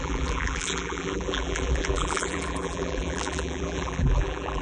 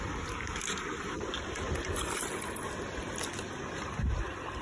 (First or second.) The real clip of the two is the second